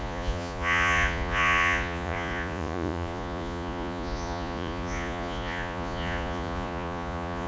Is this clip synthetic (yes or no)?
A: yes